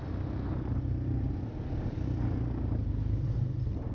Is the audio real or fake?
real